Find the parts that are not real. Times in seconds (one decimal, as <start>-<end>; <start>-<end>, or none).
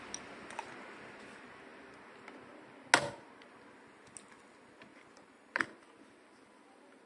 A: 4.9-5.6